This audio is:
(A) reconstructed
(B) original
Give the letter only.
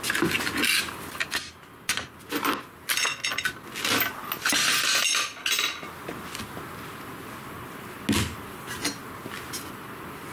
B